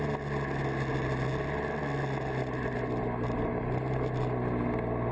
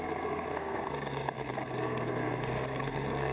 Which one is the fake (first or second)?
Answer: second